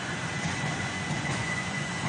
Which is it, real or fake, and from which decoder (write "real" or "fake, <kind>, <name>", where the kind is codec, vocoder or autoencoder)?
fake, vocoder, Vocos